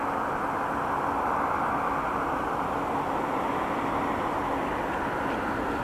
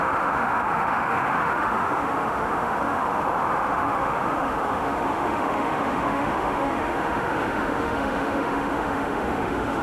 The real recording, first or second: first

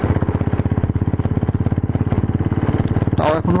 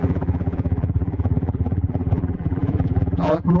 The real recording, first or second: first